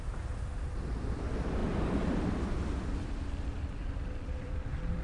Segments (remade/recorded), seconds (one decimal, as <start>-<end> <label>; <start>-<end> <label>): 0.0-1.6 recorded; 1.6-4.6 remade; 4.6-5.0 recorded